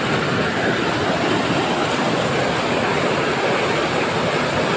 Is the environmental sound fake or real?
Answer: real